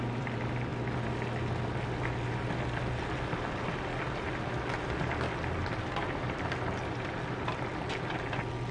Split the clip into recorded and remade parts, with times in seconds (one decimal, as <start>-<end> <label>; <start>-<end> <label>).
0.0-0.7 remade; 0.7-5.9 recorded; 5.9-7.7 remade; 7.7-8.7 recorded